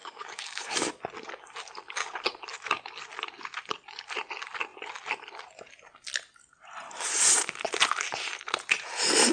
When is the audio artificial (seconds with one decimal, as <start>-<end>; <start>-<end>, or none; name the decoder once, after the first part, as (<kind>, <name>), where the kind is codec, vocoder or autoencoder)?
0.0-0.7 (codec, DAC)

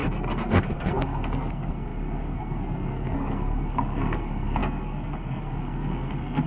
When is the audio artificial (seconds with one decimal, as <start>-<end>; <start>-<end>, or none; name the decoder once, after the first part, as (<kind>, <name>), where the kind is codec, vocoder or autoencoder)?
0.0-6.5 (codec, SNAC)